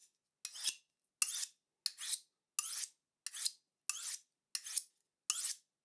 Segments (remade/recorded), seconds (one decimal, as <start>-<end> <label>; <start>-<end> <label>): 0.0-5.8 recorded